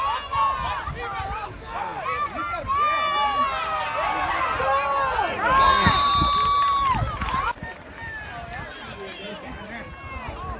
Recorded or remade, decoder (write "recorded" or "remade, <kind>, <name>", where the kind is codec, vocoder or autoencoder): recorded